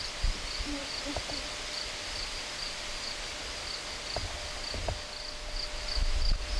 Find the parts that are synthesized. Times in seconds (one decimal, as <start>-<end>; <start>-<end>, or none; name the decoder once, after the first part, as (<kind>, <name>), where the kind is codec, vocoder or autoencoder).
none